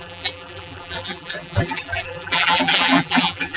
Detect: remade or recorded remade